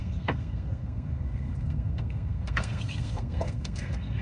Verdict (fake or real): fake